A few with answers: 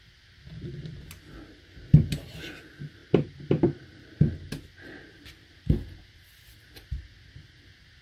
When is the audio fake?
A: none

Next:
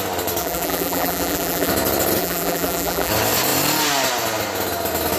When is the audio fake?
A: 0.4-1.7; 2.2-3.1

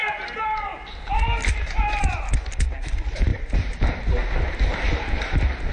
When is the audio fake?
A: 3.3-5.2

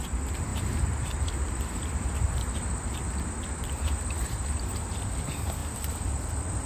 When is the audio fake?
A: 0.5-4.5; 5.6-6.7

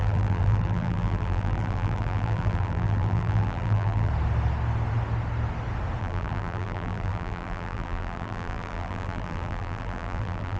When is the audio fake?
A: 0.0-4.1; 6.0-10.6

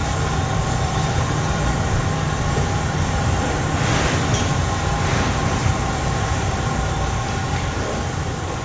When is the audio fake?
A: 0.0-3.7; 5.6-6.6

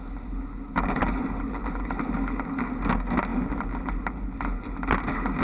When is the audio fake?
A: none

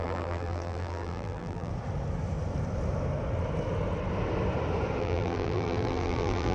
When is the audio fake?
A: 0.0-1.7; 5.0-6.5